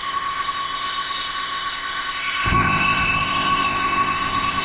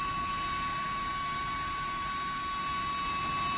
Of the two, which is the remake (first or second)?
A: first